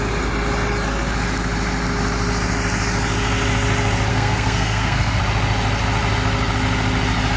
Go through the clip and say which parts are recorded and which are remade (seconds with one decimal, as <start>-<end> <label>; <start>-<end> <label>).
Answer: 0.0-4.1 recorded; 4.1-5.2 remade; 5.2-7.4 recorded